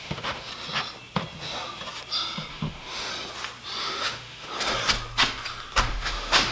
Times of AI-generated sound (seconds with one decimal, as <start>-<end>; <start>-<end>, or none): 0.0-0.5; 2.5-3.1; 3.8-4.5; 5.9-6.5